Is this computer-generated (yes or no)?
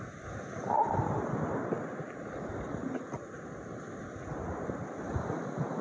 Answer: no